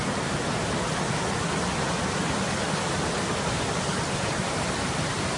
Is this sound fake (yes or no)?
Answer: no